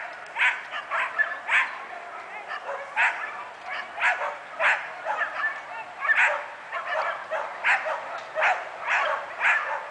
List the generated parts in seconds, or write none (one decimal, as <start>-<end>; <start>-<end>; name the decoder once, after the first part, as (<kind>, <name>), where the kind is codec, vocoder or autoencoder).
none